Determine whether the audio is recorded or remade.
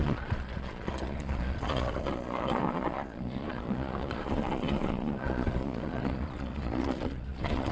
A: remade